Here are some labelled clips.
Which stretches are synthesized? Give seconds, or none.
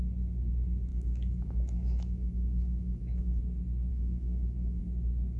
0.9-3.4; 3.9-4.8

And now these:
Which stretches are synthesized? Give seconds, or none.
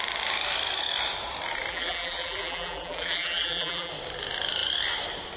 1.7-3.9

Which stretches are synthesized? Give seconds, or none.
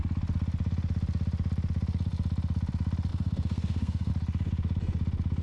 3.1-4.1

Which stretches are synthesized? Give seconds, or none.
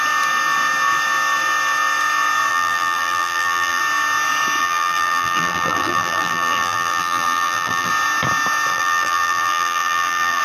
2.5-3.8; 4.6-7.9; 8.7-10.4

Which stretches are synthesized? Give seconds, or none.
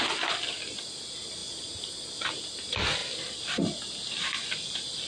none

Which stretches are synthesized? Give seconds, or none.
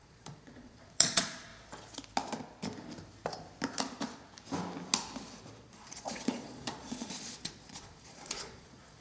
0.0-1.5; 5.6-9.0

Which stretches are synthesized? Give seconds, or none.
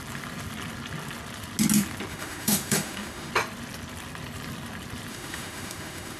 2.1-3.3; 5.1-6.2